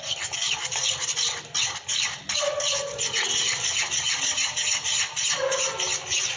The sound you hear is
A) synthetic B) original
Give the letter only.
B